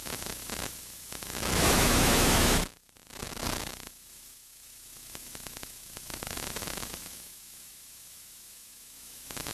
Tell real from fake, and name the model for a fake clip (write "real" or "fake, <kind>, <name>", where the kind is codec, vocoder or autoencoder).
fake, autoencoder, DAC-VAE